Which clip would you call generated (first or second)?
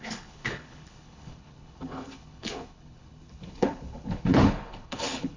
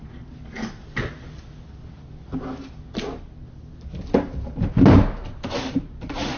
first